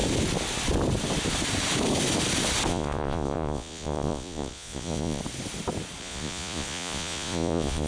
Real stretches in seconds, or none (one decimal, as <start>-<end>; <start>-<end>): 0.0-2.7; 5.2-6.0

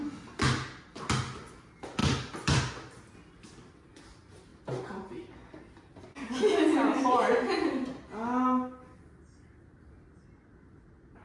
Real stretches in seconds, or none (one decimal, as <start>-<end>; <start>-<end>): 0.0-11.2

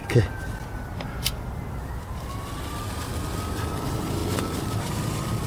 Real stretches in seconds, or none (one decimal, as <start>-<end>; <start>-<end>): none

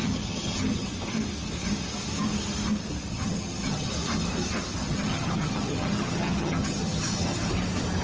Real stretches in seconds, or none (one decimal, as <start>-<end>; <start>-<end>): 0.9-3.1; 3.9-4.8; 7.5-8.0

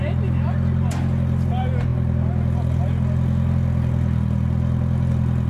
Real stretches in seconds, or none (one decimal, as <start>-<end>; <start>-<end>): 0.0-5.5

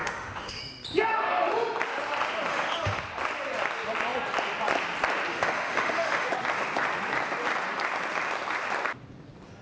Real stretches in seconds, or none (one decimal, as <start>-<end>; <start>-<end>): 0.6-2.5; 3.0-5.3; 6.3-9.6